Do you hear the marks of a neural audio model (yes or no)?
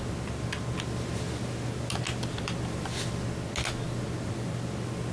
no